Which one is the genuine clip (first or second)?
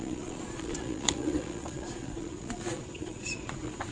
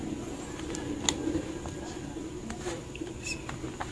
second